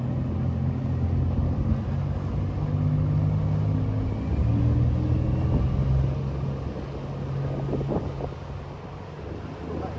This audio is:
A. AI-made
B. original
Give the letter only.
B